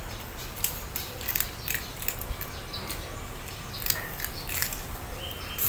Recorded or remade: recorded